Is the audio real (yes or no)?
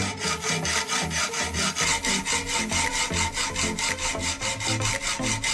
yes